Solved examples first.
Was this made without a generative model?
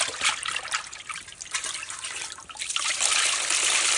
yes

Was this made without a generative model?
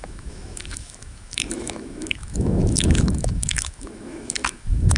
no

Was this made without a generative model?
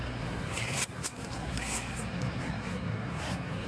no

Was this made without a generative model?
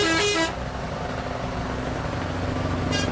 yes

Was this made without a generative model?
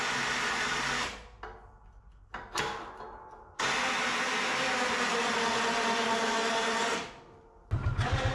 yes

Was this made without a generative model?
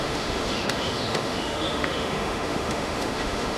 no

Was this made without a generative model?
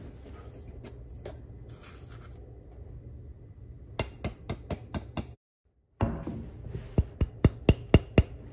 yes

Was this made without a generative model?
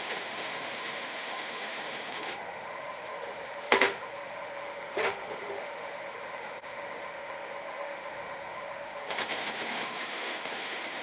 no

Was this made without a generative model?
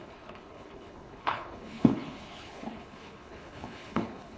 no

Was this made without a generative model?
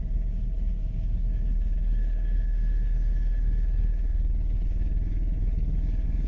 no